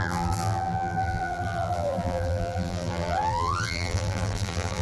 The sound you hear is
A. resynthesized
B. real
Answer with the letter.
A